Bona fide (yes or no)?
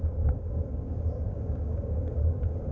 no